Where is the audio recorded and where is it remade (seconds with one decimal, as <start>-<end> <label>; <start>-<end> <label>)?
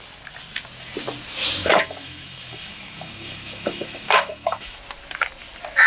0.0-1.6 recorded; 1.6-4.8 remade; 4.8-5.9 recorded